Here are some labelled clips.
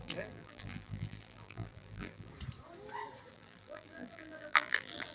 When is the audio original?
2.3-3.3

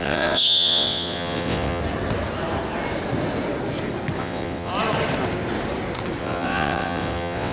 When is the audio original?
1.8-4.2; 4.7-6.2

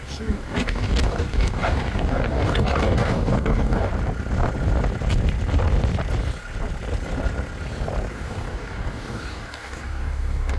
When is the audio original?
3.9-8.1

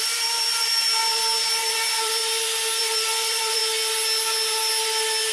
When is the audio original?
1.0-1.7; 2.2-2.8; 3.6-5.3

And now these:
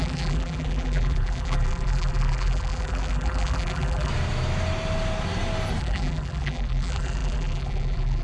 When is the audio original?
4.1-5.8

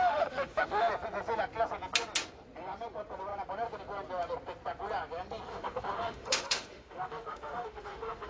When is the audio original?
0.9-5.5

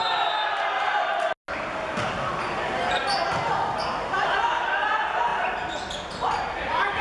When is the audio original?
0.0-7.0